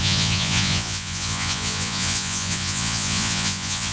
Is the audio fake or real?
fake